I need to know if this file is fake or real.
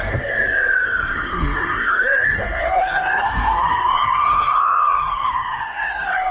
fake